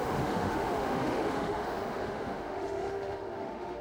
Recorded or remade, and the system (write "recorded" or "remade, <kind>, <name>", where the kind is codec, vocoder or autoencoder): remade, autoencoder, DAC-VAE